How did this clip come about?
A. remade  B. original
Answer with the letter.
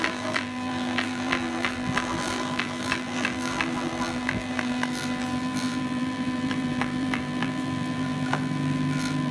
A